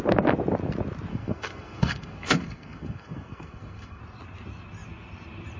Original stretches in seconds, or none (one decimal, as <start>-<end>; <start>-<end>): 0.0-1.1; 4.0-5.6